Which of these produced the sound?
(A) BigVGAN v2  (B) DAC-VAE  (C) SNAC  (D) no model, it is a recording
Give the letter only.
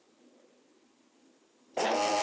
D